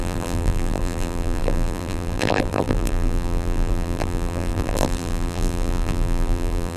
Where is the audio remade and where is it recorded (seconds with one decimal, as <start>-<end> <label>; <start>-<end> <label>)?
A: 0.0-6.8 remade